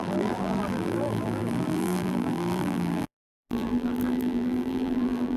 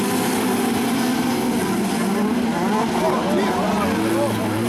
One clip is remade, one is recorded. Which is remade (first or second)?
first